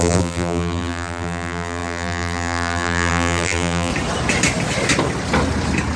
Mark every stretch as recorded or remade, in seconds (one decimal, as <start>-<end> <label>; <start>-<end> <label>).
0.0-3.9 remade; 3.9-6.0 recorded